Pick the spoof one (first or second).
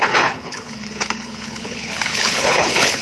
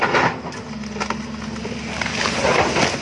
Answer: first